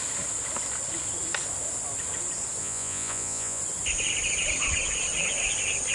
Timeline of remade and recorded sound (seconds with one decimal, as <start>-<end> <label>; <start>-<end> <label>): 0.0-2.6 recorded; 2.6-3.6 remade; 3.6-5.9 recorded